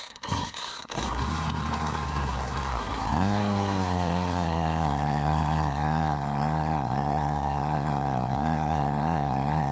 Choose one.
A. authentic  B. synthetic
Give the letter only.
B